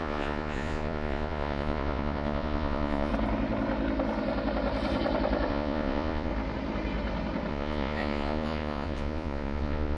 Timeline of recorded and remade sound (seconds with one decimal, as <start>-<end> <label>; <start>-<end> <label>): 0.0-3.1 remade; 3.1-5.5 recorded; 5.5-6.3 remade; 6.3-7.5 recorded; 7.5-10.0 remade